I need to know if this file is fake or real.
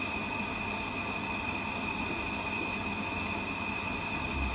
real